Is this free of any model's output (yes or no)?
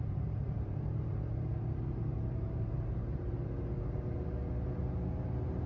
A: no